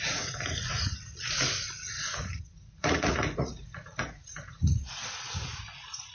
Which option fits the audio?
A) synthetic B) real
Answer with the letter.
A